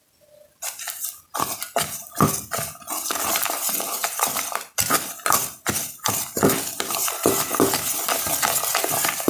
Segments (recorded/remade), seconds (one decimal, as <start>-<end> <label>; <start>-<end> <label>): 0.0-9.3 recorded